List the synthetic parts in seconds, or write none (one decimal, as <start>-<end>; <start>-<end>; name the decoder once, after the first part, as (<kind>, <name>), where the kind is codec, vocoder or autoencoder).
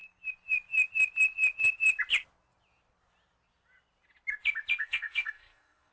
4.8-5.9 (codec, SNAC)